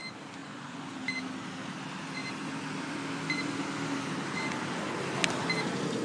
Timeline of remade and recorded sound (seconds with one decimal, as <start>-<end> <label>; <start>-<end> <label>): 0.0-0.4 recorded; 0.4-0.9 remade; 0.9-6.0 recorded